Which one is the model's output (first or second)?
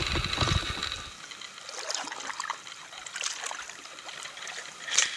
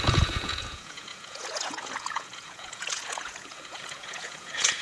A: second